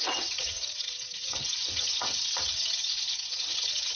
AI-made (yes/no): yes